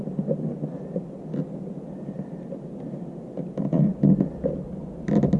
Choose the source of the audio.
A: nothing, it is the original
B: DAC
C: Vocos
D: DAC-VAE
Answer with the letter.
A